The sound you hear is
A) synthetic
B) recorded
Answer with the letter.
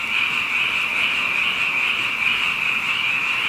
B